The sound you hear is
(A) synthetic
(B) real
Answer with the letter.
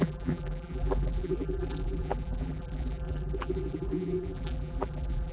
A